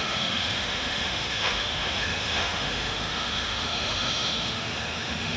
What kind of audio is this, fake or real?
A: fake